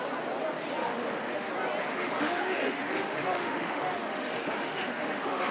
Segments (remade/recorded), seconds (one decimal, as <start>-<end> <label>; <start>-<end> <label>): 0.0-0.8 recorded; 0.8-1.5 remade; 1.5-1.9 recorded; 1.9-5.5 remade